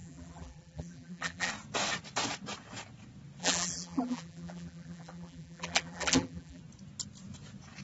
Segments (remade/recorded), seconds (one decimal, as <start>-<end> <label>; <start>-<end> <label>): 0.0-1.5 remade; 1.5-3.4 recorded; 3.4-6.6 remade; 6.6-7.8 recorded